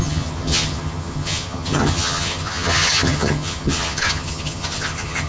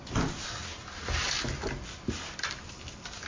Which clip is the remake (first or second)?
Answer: first